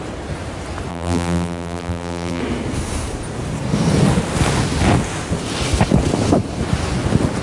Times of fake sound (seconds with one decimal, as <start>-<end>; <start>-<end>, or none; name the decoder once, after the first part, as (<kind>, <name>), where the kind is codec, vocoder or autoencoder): 0.9-2.4 (vocoder, BigVGAN v2)